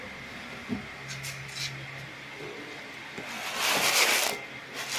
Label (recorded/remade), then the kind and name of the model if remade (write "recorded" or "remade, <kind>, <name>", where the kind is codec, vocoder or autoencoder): recorded